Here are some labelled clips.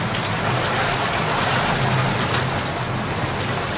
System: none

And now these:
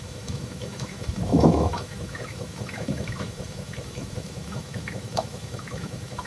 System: autoencoder, DAC-VAE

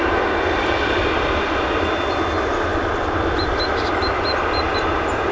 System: none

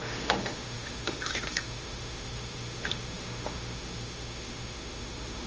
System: autoencoder, DAC-VAE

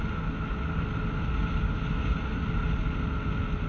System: none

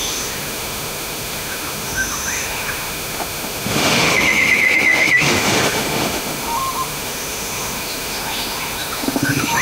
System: autoencoder, DAC-VAE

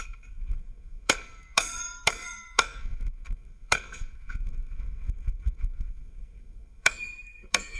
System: codec, SNAC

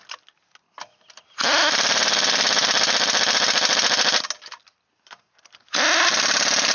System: none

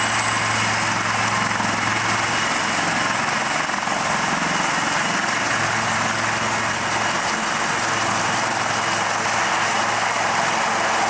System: none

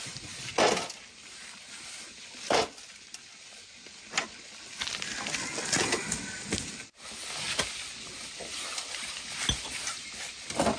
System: none